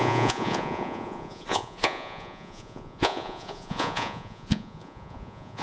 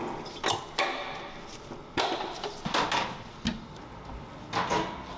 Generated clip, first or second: first